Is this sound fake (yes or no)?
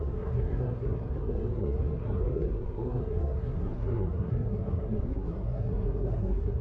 yes